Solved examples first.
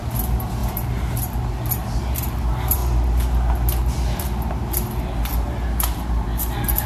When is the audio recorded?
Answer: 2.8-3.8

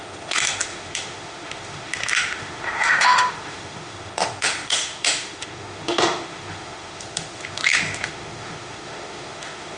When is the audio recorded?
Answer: none

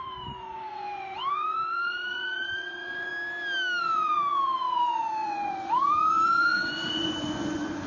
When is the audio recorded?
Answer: 3.1-3.8

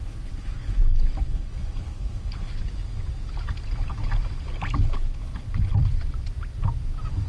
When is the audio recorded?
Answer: 2.6-4.8; 5.7-7.3

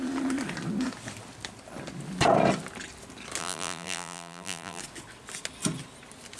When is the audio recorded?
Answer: 0.0-3.4; 4.8-6.4

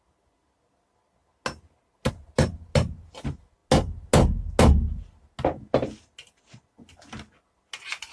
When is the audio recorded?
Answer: 0.0-8.1

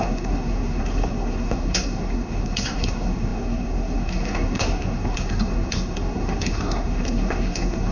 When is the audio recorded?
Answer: none

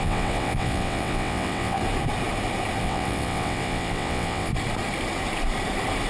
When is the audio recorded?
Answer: 1.8-2.8; 4.5-6.1